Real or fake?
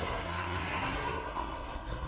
fake